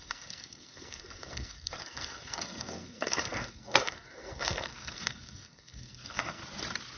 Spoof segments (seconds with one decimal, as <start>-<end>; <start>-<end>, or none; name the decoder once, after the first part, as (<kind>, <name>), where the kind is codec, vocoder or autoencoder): 0.0-6.4 (codec, SNAC)